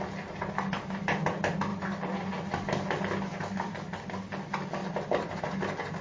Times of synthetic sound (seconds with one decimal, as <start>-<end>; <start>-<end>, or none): none